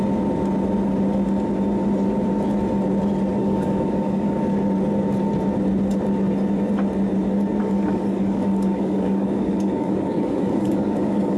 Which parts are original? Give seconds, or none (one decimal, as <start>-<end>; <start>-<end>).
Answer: 0.0-3.4; 4.4-7.6